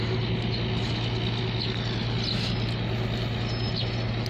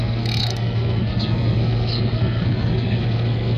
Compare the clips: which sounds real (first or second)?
first